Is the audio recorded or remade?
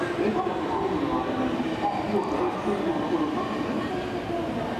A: recorded